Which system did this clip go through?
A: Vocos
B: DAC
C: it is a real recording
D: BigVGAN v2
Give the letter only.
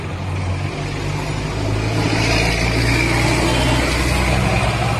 C